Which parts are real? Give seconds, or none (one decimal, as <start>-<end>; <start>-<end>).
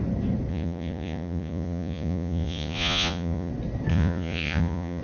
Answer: 0.0-0.5; 3.5-3.9